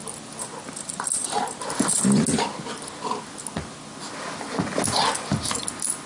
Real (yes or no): yes